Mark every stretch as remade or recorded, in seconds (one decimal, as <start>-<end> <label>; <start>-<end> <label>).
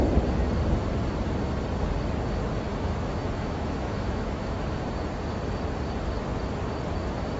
0.0-2.7 recorded; 2.7-4.9 remade; 4.9-7.4 recorded